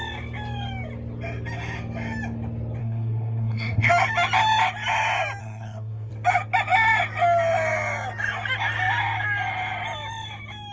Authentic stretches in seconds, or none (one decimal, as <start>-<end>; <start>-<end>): 0.0-2.8; 3.9-5.4; 6.1-10.7